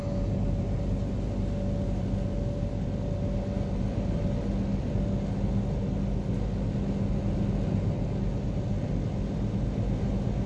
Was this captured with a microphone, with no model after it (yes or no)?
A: yes